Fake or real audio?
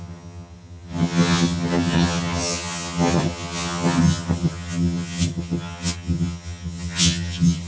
fake